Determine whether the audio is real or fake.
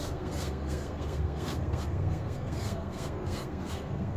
fake